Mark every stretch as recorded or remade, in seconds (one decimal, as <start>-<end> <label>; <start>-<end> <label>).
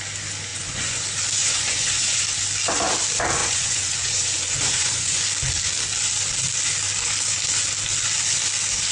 0.0-0.5 recorded; 0.5-1.0 remade; 1.0-1.4 recorded; 1.4-2.2 remade; 2.2-3.4 recorded; 3.4-5.2 remade; 5.2-8.9 recorded